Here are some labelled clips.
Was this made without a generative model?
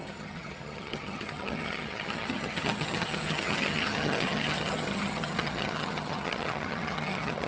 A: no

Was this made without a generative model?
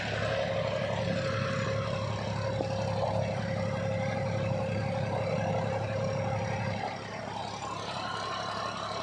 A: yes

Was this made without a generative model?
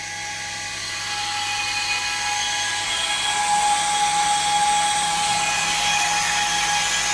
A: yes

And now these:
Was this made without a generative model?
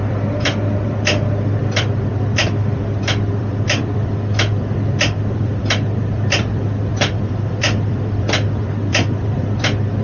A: no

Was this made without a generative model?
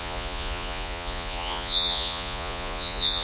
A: no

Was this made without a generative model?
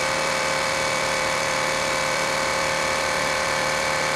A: no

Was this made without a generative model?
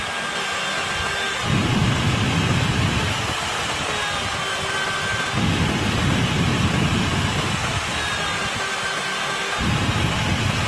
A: yes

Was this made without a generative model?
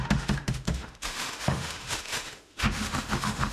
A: no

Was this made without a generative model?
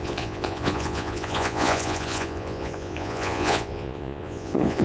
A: no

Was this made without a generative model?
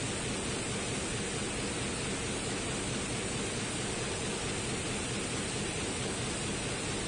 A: yes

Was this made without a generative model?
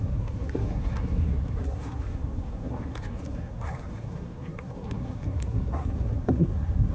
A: no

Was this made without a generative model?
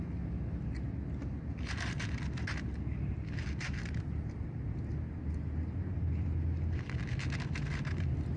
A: yes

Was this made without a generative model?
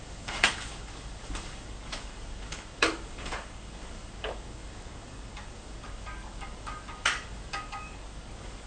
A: no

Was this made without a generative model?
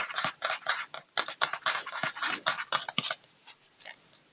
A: yes